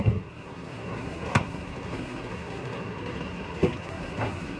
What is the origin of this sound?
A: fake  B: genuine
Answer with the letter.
A